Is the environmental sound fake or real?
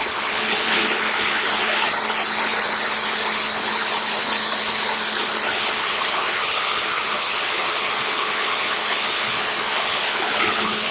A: fake